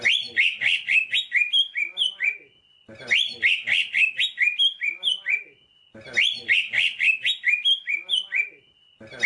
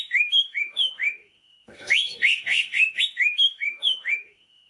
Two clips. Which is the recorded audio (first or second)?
first